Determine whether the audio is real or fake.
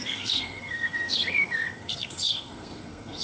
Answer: fake